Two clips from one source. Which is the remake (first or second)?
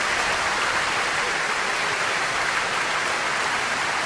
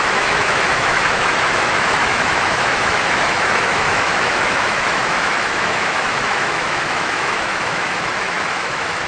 second